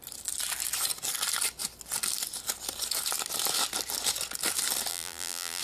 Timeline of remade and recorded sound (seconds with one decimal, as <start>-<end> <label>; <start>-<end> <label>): 0.0-4.9 recorded; 4.9-5.6 remade